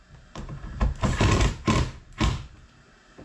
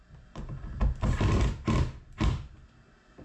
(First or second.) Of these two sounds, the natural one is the second